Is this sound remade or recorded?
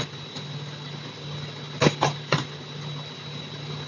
recorded